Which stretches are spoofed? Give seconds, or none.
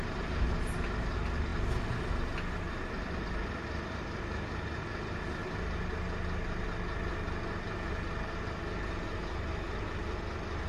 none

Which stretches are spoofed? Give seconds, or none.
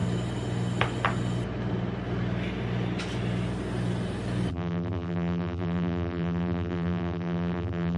4.5-8.0 (vocoder, BigVGAN v2)